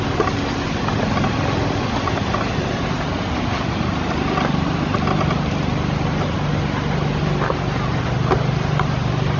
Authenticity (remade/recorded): recorded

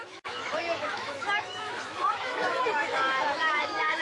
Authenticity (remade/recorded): remade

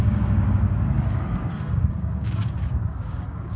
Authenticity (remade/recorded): remade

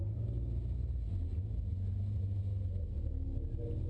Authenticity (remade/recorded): recorded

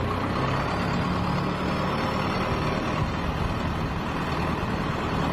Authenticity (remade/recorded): recorded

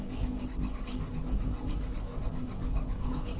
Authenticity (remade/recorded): remade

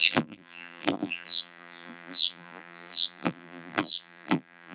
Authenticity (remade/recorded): remade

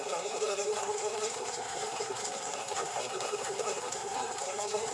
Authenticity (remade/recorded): remade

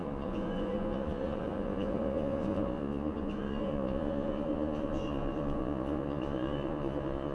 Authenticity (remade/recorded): remade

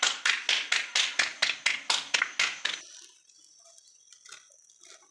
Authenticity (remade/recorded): recorded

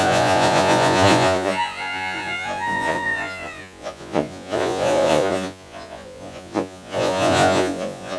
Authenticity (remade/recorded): remade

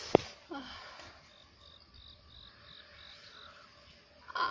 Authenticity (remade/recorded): recorded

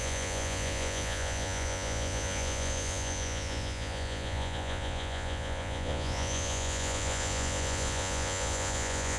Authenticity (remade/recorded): remade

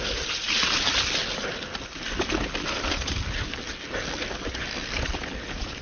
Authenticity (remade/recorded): recorded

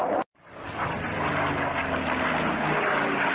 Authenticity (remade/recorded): recorded